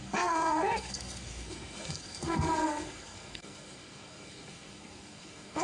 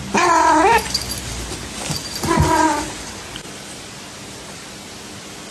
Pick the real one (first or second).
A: second